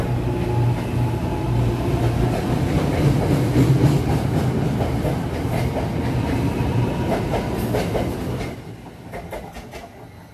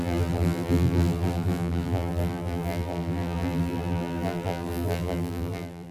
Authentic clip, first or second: first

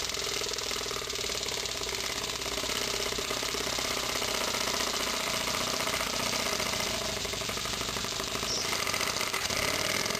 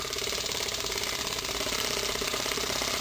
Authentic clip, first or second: first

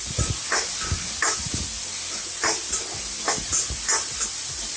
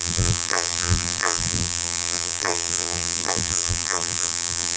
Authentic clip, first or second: first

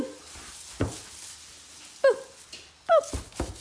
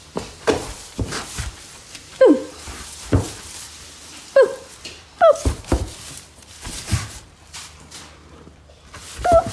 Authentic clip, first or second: first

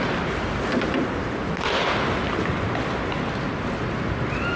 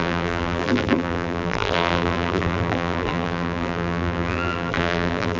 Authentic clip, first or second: first